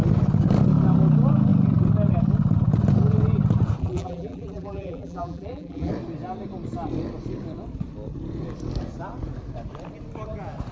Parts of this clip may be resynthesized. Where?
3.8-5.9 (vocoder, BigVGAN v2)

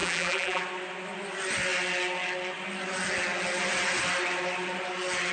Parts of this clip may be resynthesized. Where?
0.0-0.6 (vocoder, BigVGAN v2)

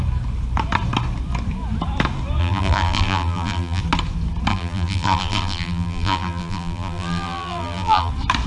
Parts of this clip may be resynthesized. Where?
2.4-3.8 (vocoder, BigVGAN v2); 4.5-8.1